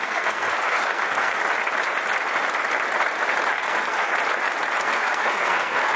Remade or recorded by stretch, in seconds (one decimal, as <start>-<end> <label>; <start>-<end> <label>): 0.0-1.4 remade; 1.4-3.5 recorded; 3.5-4.1 remade; 4.1-4.8 recorded; 4.8-6.0 remade